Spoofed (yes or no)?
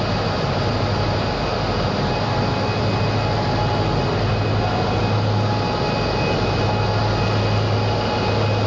no